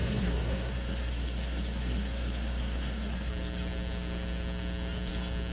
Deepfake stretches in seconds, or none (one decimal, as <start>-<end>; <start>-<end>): 0.0-3.3

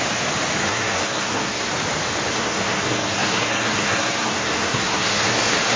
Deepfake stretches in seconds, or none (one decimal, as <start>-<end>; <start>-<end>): 0.6-1.7; 2.3-5.8